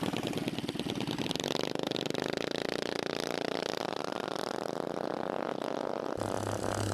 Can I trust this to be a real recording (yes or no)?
yes